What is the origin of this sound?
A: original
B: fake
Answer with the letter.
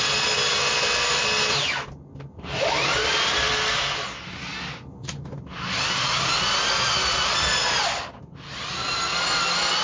A